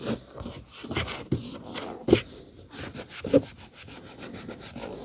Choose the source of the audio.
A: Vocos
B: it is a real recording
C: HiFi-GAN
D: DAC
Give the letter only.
B